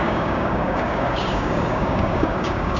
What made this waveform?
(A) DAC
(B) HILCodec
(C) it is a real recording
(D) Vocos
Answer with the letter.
A